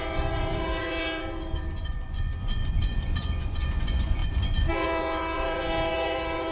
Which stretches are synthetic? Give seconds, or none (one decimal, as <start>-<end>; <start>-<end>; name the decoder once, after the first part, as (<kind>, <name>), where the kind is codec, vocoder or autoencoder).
0.0-6.5 (vocoder, Vocos)